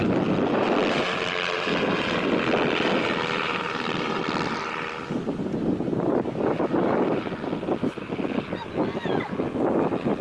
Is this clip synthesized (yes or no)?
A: no